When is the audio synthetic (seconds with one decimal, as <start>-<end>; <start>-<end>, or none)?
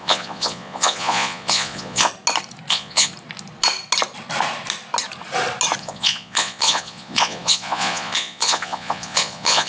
0.0-2.1; 2.7-3.1; 5.8-9.7